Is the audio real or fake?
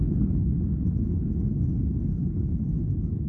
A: fake